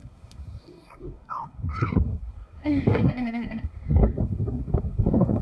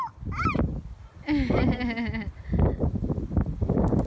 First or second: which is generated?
first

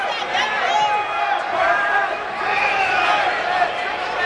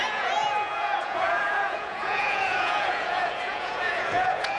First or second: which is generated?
second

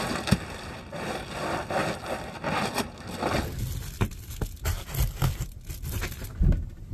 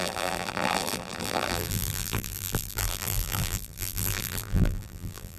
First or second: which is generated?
second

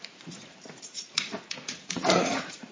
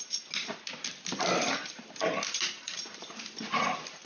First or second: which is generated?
first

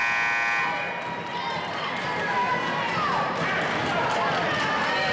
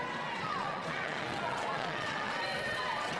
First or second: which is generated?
second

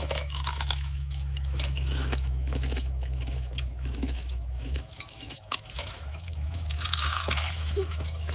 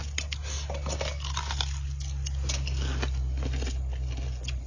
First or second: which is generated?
first